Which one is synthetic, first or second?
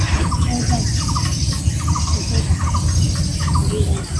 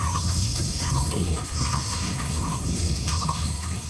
second